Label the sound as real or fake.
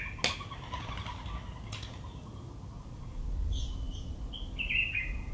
real